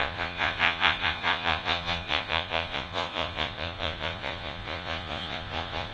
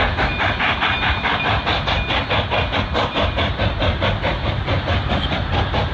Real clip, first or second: second